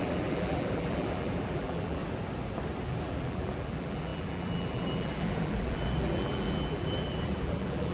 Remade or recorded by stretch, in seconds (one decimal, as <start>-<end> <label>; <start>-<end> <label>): 0.0-2.0 remade; 2.0-2.8 recorded; 2.8-7.9 remade